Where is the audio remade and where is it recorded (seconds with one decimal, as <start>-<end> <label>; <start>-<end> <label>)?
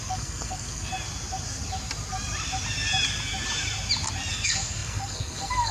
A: 0.0-0.9 remade; 0.9-4.3 recorded; 4.3-5.7 remade